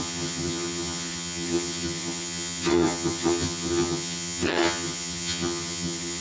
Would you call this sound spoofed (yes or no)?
yes